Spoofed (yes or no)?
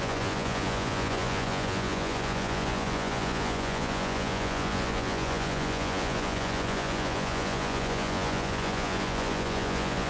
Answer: yes